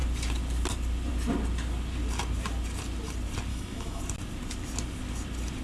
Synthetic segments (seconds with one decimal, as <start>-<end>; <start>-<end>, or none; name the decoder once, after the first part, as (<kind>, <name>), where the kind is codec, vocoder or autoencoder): 3.5-4.0 (autoencoder, DAC-VAE)